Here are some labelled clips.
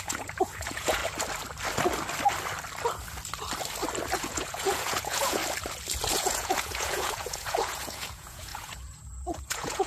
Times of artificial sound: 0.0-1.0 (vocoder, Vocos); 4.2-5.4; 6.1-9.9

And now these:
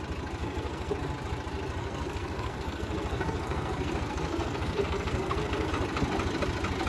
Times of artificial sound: 0.4-0.9 (codec, SNAC); 1.8-5.7